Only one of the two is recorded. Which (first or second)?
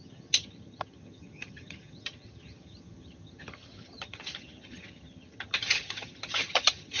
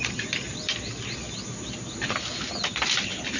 second